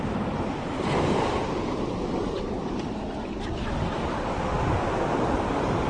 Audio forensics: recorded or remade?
recorded